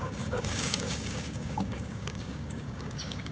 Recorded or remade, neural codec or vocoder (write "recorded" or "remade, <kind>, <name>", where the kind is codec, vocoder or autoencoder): remade, codec, DAC